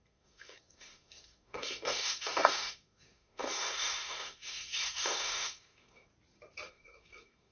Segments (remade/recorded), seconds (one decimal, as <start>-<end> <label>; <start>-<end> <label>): 0.0-6.1 remade; 6.1-6.7 recorded; 6.7-7.5 remade